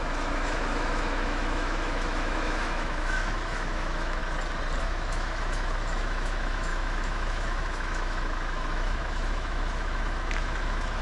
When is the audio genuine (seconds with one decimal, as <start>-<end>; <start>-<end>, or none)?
4.2-4.8